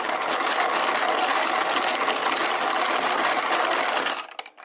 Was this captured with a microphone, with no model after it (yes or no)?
yes